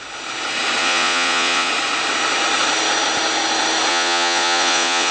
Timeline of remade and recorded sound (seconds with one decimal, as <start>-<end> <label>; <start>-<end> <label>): 0.0-0.8 recorded; 0.8-1.7 remade; 1.7-3.9 recorded; 3.9-5.1 remade